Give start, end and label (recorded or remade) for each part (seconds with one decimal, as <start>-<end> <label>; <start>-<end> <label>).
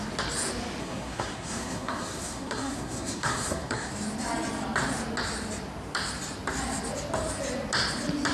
0.0-0.8 recorded; 0.8-3.9 remade; 3.9-8.3 recorded